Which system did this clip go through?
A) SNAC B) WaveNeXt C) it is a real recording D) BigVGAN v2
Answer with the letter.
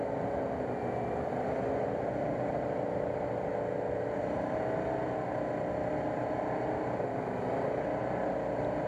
C